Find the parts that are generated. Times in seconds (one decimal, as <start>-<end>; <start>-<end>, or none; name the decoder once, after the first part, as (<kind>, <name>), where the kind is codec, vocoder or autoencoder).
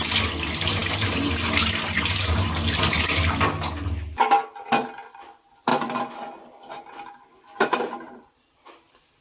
none